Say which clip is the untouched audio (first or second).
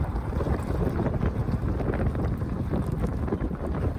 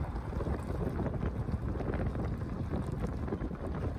second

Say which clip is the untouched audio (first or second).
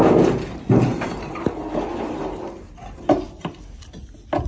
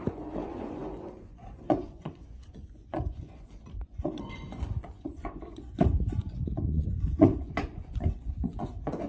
first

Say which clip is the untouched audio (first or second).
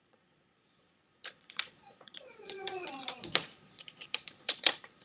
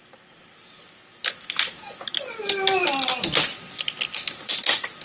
second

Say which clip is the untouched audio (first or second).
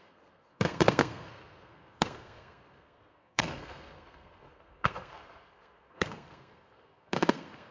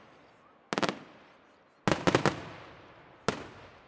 second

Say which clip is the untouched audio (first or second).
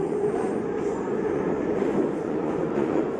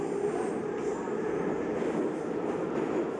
second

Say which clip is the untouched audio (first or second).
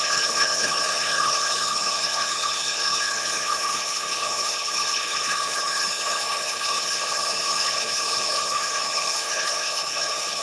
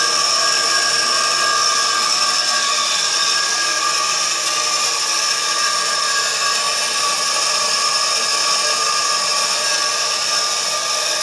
second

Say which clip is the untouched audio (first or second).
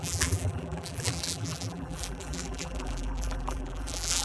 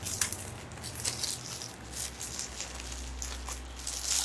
second